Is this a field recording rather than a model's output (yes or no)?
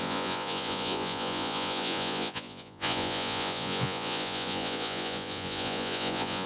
no